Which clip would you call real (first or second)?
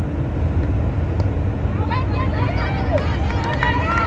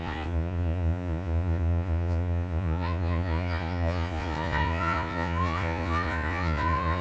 first